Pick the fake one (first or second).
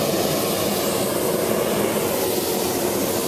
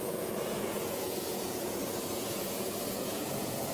second